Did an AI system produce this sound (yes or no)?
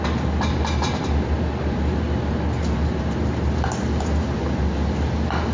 no